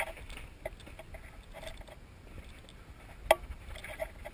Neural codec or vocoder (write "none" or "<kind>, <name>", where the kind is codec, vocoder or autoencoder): none